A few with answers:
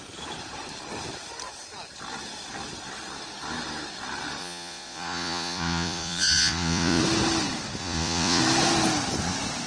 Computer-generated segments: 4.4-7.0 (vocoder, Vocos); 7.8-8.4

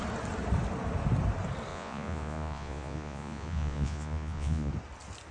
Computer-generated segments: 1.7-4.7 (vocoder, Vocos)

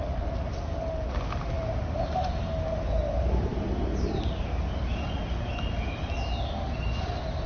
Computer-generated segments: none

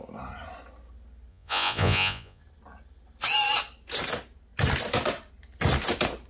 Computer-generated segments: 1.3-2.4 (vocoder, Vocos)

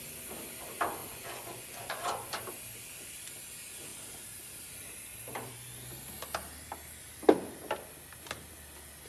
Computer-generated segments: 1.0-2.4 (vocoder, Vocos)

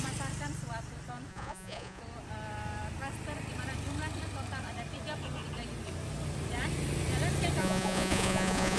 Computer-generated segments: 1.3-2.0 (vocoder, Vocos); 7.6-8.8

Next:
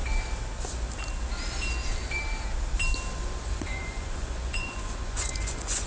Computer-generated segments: 3.5-5.9 (vocoder, Vocos)

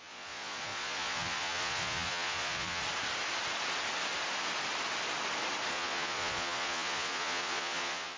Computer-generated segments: 0.0-2.8 (vocoder, Vocos); 5.7-8.2